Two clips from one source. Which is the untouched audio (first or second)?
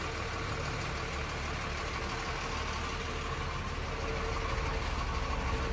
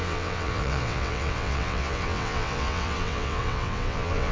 first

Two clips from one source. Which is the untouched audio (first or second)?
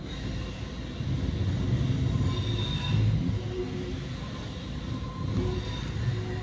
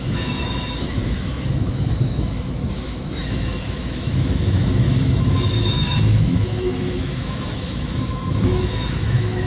first